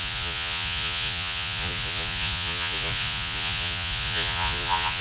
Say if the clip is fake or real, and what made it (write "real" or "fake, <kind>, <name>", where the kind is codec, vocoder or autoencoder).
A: fake, vocoder, Vocos